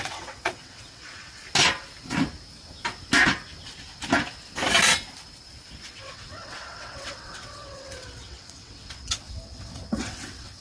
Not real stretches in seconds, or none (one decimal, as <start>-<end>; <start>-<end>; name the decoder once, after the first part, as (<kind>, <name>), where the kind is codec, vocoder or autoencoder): 0.0-1.4 (vocoder, WaveNeXt); 5.9-10.6